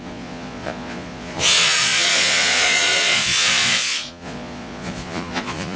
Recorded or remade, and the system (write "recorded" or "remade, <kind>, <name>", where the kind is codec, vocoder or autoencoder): remade, vocoder, Vocos